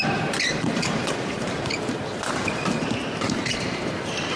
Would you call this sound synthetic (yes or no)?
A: yes